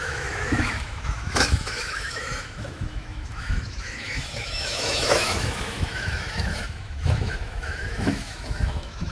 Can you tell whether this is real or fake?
fake